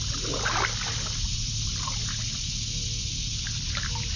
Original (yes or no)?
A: yes